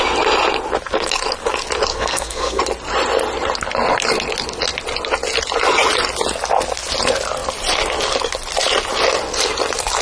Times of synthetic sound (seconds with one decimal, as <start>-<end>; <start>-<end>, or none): 1.9-2.6

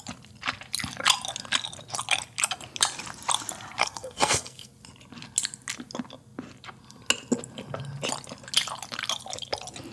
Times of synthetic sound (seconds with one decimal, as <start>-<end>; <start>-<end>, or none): 3.8-4.7